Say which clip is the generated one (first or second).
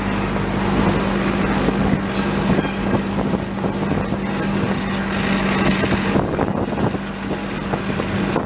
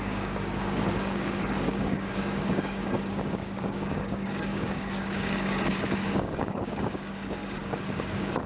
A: second